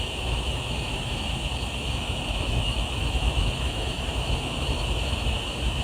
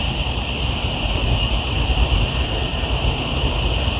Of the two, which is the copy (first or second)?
first